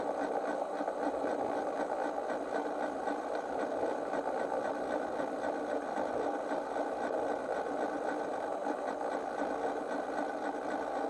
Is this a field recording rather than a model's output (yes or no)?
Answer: yes